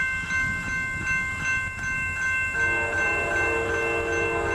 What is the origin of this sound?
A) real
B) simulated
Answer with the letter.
A